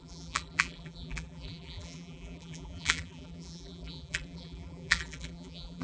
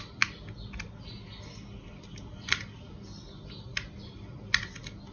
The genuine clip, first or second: second